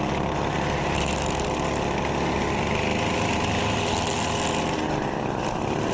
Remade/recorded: recorded